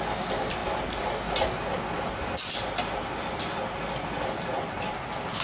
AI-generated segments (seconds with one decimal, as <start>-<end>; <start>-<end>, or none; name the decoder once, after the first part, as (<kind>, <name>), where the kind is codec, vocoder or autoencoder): none